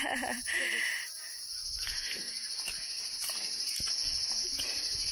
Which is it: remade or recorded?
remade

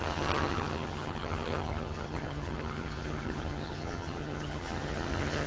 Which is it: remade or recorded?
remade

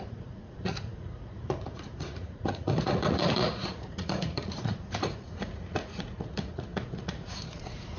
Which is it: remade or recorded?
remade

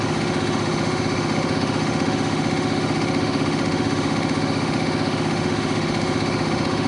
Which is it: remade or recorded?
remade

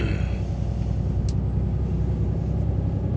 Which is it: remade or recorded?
recorded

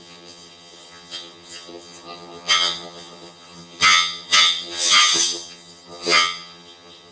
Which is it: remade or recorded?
remade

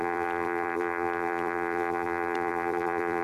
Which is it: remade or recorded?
remade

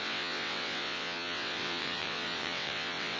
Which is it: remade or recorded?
remade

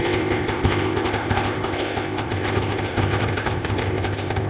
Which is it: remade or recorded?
remade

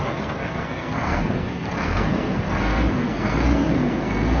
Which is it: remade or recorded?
remade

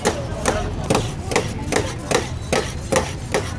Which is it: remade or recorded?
recorded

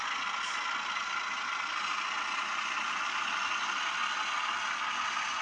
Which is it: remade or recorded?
recorded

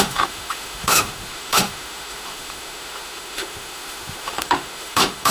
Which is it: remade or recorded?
remade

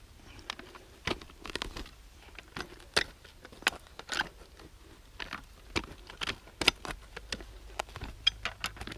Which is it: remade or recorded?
recorded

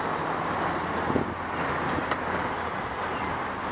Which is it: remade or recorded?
recorded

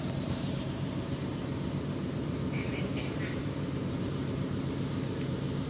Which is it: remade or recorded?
remade